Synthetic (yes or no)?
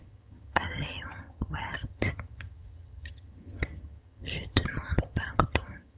yes